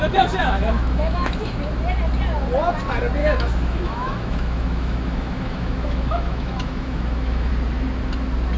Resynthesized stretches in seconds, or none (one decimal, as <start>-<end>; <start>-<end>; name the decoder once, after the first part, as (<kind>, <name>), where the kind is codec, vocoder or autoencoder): 0.4-1.5 (autoencoder, DAC-VAE); 3.2-7.5